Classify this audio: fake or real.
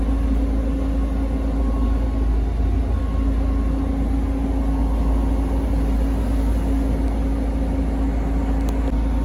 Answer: real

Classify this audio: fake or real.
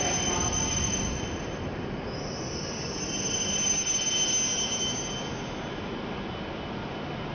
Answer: real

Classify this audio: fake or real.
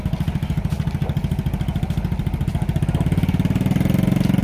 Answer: real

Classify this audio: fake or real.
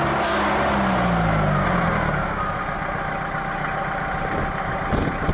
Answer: real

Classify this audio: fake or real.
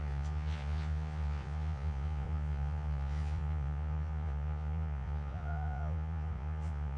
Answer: fake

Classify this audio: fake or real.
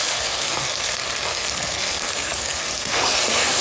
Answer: fake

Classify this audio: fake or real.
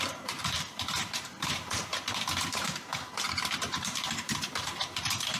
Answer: fake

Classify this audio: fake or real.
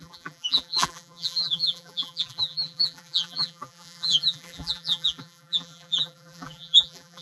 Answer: fake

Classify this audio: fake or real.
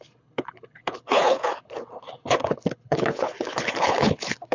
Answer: fake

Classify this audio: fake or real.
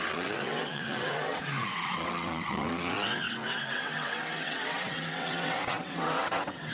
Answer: fake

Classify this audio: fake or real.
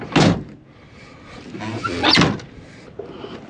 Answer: real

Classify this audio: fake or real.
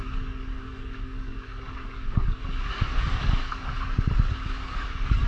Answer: fake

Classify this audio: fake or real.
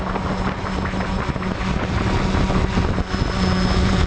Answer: real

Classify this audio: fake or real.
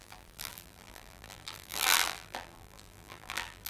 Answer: fake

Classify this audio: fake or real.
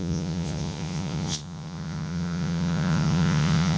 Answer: fake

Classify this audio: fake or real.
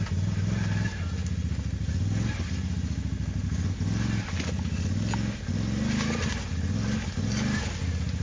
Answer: real